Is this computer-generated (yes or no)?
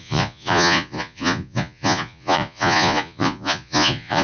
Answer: yes